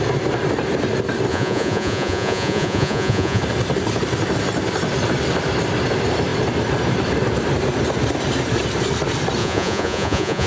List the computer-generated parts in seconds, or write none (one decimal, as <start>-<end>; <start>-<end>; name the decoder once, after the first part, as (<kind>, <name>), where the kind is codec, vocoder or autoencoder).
1.3-3.4 (vocoder, Vocos); 9.4-10.5